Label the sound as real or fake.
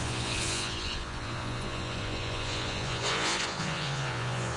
fake